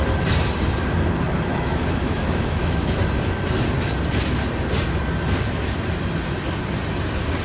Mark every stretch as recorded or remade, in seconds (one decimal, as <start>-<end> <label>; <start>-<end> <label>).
0.0-1.5 recorded; 1.5-3.0 remade; 3.0-7.4 recorded